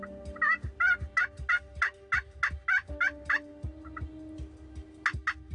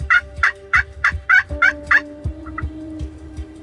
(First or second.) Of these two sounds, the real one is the first